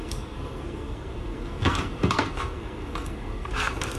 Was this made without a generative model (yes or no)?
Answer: no